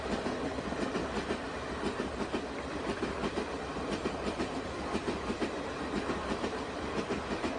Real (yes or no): yes